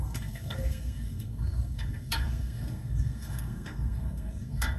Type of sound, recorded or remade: remade